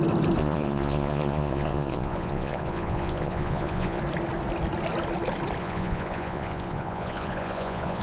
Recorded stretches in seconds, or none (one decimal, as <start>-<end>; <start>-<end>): 0.0-0.4; 4.0-5.6